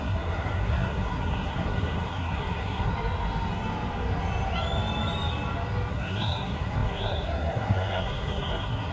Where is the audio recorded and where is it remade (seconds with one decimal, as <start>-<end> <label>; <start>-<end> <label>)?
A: 0.0-2.9 remade; 2.9-5.9 recorded; 5.9-8.9 remade